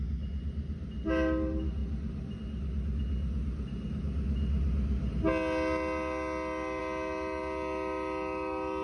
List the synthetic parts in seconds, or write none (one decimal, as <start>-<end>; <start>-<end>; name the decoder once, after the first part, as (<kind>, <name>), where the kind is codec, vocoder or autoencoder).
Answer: none